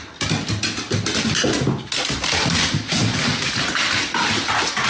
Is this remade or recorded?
recorded